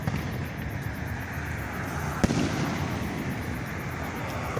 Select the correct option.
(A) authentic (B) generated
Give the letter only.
A